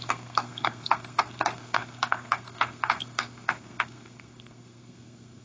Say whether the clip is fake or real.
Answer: fake